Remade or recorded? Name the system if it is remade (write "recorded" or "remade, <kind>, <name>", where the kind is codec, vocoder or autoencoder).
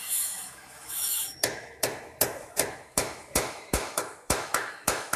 remade, autoencoder, DAC-VAE